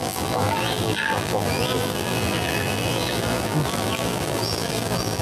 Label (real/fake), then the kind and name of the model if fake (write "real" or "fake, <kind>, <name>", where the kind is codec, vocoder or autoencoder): fake, vocoder, BigVGAN v2